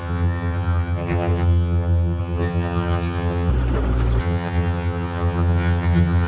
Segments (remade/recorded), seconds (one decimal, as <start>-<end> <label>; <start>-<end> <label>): 0.0-3.5 remade; 3.5-4.2 recorded; 4.2-6.3 remade